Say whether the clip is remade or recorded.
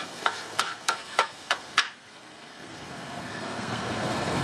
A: remade